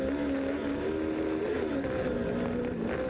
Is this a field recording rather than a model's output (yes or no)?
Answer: yes